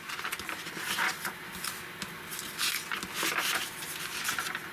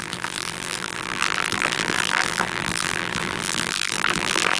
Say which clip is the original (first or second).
first